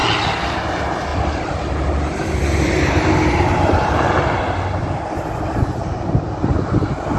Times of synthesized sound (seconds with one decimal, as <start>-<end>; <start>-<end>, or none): 1.1-5.4